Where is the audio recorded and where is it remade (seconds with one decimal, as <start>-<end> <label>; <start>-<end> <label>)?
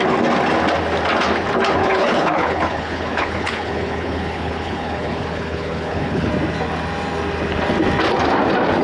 0.0-1.8 recorded; 1.8-6.3 remade; 6.3-8.8 recorded